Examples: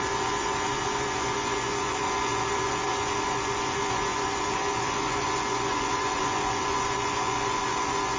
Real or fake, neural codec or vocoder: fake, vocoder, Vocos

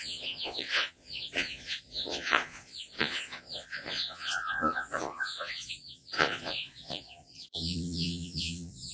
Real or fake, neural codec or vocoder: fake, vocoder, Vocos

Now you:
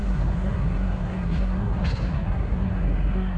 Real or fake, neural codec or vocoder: fake, codec, SNAC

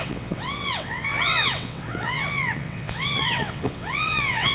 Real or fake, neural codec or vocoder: fake, vocoder, WaveNeXt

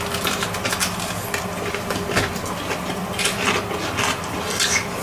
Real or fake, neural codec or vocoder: real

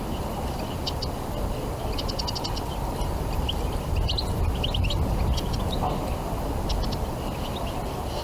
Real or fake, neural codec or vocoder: real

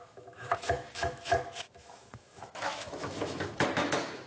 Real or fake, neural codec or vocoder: fake, autoencoder, DAC-VAE